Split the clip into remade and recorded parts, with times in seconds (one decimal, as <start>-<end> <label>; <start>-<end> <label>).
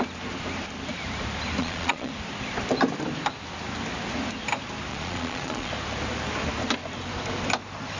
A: 0.0-1.6 recorded; 1.6-2.1 remade; 2.1-4.9 recorded; 4.9-5.7 remade; 5.7-8.0 recorded